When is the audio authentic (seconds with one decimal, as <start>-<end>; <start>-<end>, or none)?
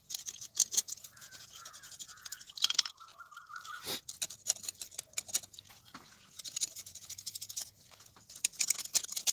3.1-5.6